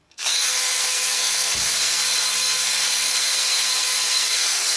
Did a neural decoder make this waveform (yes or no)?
yes